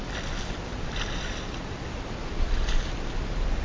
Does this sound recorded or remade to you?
recorded